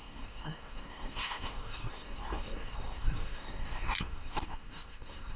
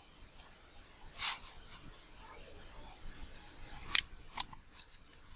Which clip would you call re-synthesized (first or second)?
first